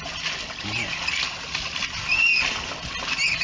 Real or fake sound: real